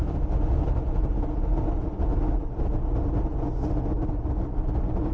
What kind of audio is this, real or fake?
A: real